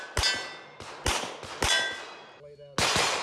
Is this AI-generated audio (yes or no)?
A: no